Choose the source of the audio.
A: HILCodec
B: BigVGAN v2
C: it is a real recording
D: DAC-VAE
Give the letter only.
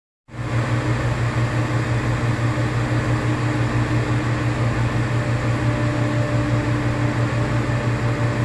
C